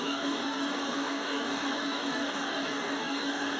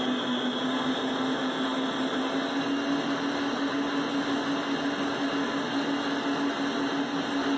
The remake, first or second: first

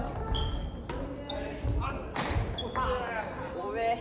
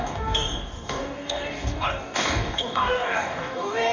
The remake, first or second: second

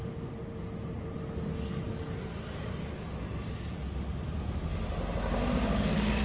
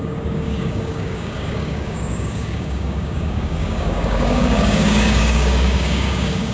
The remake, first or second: second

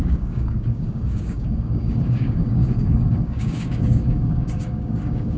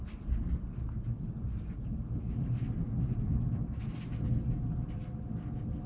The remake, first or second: first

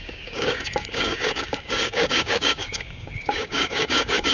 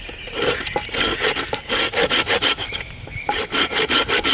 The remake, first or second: first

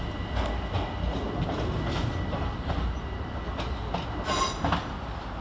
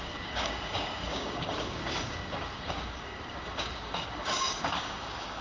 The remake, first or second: second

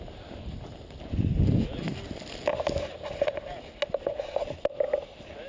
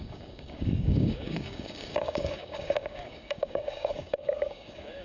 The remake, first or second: second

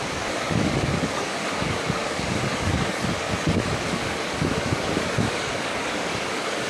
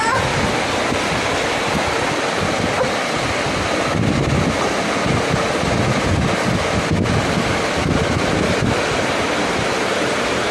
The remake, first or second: first